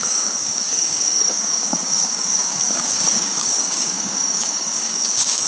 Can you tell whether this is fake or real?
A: fake